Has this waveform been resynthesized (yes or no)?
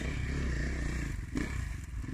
no